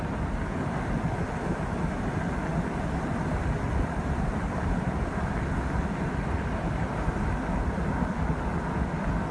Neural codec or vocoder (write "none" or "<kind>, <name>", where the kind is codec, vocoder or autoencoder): none